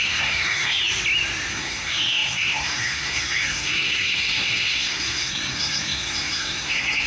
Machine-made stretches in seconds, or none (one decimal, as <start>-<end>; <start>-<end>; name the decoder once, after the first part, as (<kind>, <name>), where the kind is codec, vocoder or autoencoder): 0.0-0.8 (codec, SNAC); 1.5-7.1